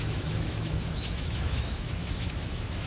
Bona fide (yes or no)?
no